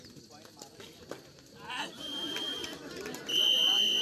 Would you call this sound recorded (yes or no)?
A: yes